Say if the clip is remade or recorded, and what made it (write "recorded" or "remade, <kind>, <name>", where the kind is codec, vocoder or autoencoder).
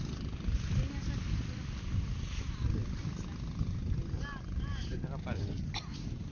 recorded